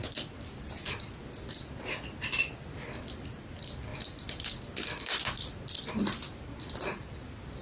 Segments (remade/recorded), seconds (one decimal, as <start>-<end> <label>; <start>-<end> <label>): 0.0-7.6 recorded